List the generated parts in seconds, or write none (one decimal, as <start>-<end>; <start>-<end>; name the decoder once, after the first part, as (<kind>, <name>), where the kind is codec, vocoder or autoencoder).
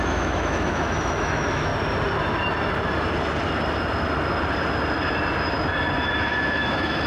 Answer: 0.0-1.7 (autoencoder, DAC-VAE); 6.0-7.1